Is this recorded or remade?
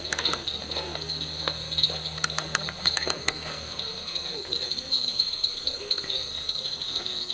remade